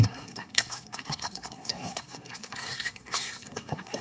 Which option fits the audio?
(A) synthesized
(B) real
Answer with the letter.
A